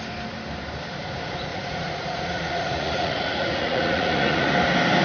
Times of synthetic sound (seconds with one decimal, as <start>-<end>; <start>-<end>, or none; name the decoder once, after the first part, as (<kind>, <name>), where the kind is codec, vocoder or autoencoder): 1.5-4.5 (vocoder, Vocos)